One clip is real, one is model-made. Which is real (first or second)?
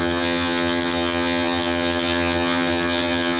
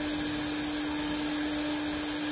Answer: second